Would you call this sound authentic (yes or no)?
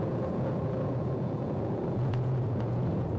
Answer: no